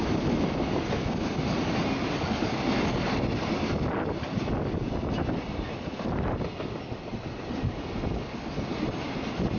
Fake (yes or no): no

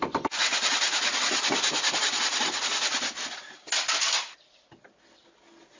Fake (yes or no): no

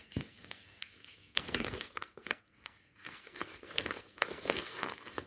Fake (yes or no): yes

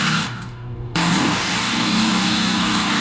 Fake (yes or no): yes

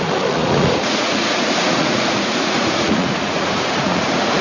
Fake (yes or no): yes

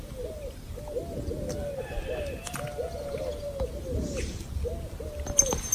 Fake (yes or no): no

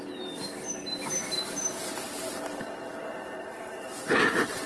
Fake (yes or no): no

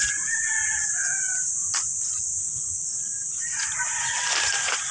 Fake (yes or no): no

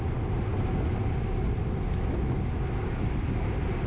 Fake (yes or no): no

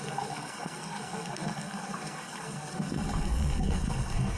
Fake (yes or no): yes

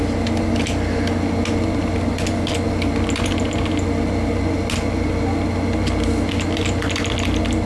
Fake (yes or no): no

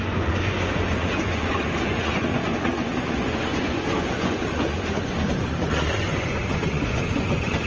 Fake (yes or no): yes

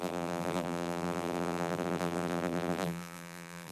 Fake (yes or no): yes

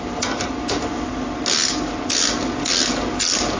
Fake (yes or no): no